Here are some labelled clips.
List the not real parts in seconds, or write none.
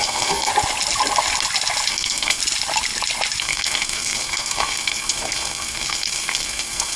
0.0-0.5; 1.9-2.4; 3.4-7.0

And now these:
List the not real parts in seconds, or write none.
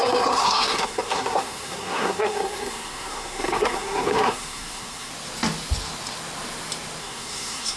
0.0-5.1; 7.0-7.8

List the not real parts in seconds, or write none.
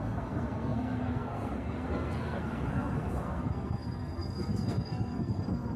0.0-5.8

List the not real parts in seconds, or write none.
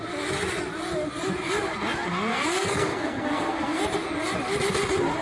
2.3-3.8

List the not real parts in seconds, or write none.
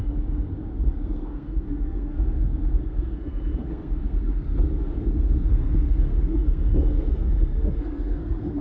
0.0-8.6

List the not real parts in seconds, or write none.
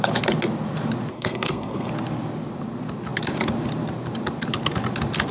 1.1-1.9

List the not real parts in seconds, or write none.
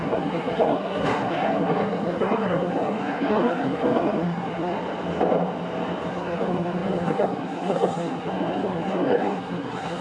0.0-4.8; 6.1-10.0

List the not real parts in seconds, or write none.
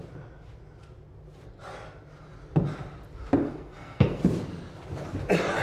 3.4-4.2